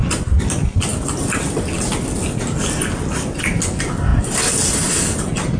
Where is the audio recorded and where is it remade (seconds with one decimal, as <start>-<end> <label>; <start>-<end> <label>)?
0.0-5.6 recorded